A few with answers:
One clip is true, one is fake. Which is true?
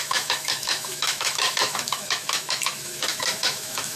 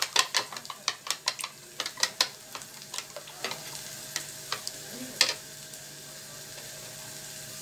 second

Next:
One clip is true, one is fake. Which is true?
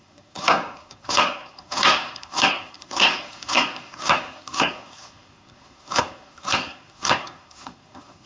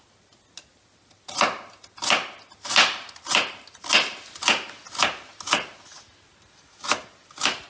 second